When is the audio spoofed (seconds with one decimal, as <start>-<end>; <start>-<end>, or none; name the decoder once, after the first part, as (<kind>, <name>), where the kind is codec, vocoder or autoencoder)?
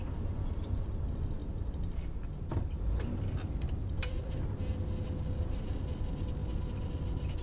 none